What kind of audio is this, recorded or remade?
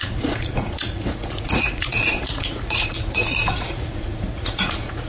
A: remade